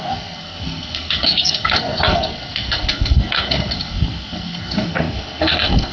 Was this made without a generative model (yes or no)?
no